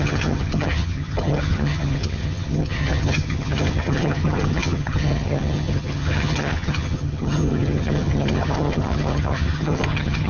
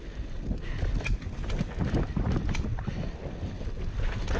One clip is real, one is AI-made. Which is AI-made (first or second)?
first